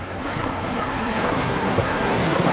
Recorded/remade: remade